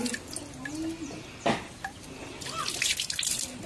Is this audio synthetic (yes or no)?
no